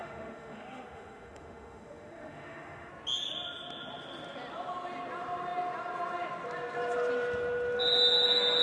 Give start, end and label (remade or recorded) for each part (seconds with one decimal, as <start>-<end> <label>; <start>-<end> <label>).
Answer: 0.0-2.9 remade; 2.9-8.6 recorded